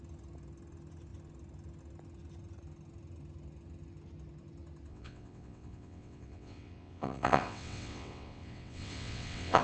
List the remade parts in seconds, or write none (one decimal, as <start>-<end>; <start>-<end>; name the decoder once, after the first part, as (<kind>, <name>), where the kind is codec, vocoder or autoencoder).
4.9-9.6 (vocoder, WaveNeXt)